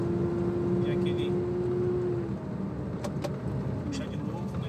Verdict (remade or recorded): recorded